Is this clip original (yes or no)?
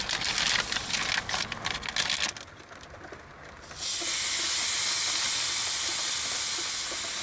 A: yes